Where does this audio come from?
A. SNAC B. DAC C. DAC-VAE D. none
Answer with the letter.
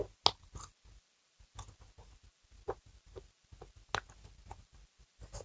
D